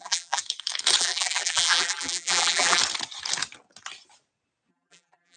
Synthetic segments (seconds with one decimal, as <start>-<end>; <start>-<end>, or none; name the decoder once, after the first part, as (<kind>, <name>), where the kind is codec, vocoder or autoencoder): 0.0-0.4 (vocoder, BigVGAN v2); 1.0-2.8; 4.7-5.4